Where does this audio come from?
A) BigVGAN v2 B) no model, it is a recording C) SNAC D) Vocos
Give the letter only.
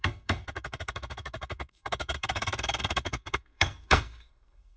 C